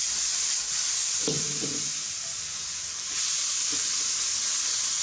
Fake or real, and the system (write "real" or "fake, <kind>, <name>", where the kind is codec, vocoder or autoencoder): real